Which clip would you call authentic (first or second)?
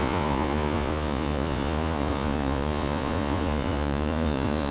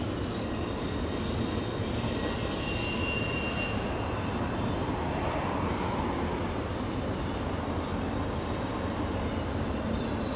second